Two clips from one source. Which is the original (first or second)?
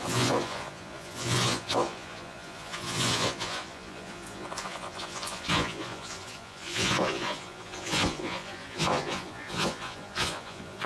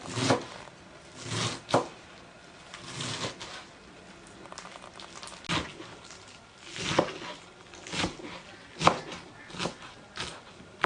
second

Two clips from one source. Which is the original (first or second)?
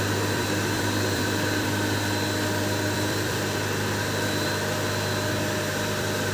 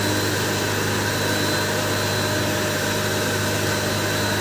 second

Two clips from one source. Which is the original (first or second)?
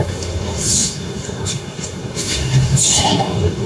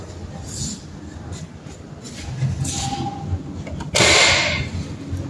second